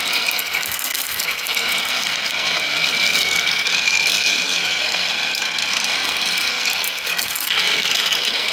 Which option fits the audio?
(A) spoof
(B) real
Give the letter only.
A